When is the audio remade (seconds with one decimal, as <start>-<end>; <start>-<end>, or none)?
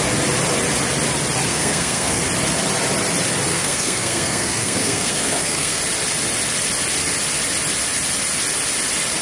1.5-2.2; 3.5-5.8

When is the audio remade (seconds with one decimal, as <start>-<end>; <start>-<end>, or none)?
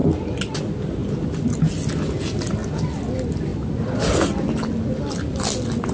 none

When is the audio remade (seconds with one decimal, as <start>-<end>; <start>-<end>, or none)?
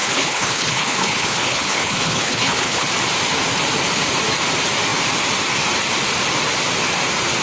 0.0-2.9